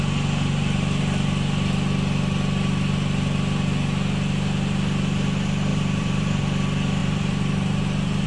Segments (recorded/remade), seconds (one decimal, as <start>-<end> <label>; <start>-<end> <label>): 0.0-5.7 recorded; 5.7-6.4 remade; 6.4-7.0 recorded; 7.0-8.3 remade